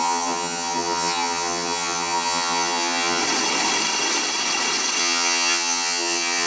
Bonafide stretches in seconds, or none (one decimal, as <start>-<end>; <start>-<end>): 3.2-5.0